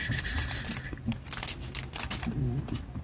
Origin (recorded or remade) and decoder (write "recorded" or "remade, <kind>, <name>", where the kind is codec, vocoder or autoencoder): recorded